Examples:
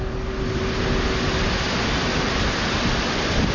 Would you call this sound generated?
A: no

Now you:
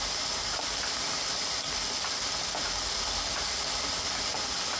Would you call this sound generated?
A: no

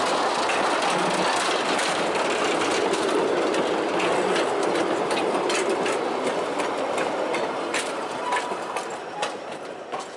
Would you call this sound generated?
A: no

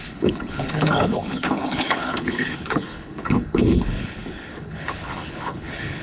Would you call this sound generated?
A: yes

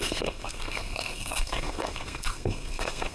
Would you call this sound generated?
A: yes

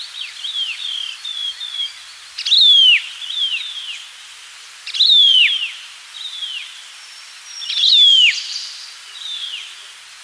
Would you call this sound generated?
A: no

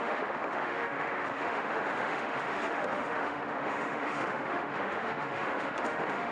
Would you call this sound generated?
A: yes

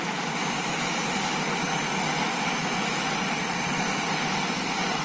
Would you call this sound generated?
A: no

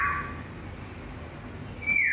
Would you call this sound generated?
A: no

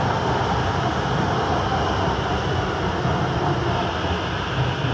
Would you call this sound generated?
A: no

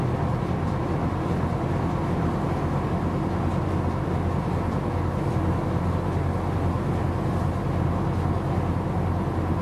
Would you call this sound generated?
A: no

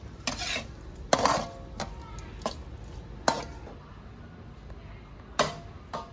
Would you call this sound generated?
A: no